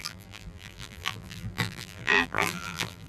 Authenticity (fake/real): fake